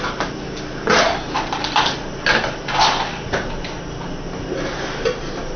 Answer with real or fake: real